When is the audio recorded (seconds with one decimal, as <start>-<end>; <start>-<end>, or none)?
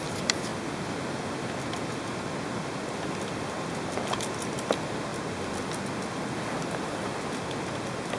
0.0-8.2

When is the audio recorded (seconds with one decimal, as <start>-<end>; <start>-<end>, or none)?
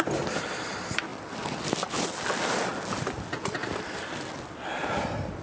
0.0-5.4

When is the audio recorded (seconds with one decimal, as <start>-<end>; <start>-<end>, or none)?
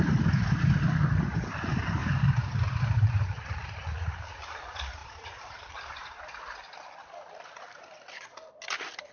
0.0-2.0; 3.1-5.0; 6.4-9.1